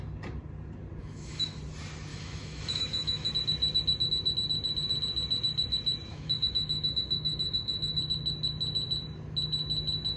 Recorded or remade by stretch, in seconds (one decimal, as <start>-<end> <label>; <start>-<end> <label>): 0.0-1.0 recorded; 1.0-1.6 remade; 1.6-2.1 recorded; 2.1-3.3 remade; 3.3-6.1 recorded; 6.1-8.0 remade; 8.0-10.2 recorded